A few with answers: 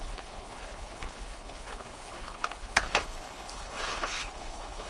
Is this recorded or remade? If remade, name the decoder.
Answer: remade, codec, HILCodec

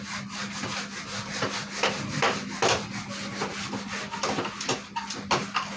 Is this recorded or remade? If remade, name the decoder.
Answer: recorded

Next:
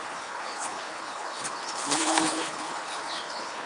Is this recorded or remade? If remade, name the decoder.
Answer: remade, codec, HILCodec